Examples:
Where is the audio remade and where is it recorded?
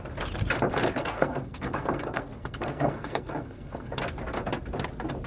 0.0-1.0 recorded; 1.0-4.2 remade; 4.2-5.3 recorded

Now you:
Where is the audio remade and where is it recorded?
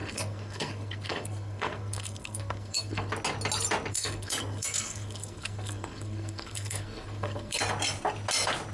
0.0-3.1 remade; 3.1-3.9 recorded; 3.9-7.6 remade; 7.6-8.7 recorded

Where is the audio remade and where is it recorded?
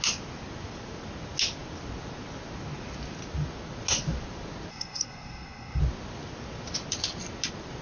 0.0-4.7 recorded; 4.7-5.8 remade; 5.8-7.8 recorded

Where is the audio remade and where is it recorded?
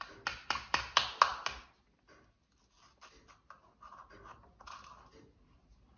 0.0-6.0 recorded